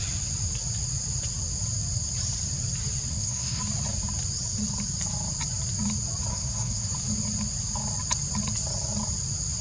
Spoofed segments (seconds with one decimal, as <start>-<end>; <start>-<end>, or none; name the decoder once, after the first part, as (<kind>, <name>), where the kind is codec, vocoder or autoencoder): 3.1-3.6 (codec, SNAC); 6.3-6.9